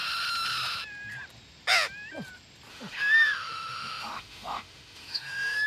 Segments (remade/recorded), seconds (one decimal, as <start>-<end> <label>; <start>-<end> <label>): 0.0-2.7 recorded; 2.7-5.7 remade

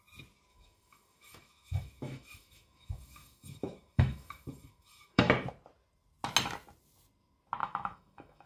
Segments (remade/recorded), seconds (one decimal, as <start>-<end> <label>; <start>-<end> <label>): 0.0-0.5 recorded; 0.5-5.3 remade; 5.3-7.6 recorded; 7.6-8.5 remade